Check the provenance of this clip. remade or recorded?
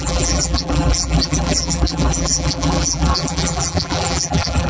remade